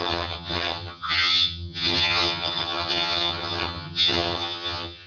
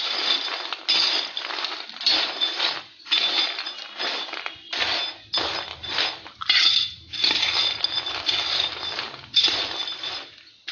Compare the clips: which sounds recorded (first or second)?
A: second